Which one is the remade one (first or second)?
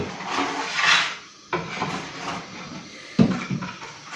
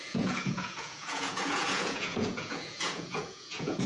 second